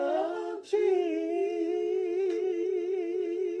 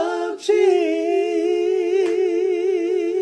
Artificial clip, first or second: first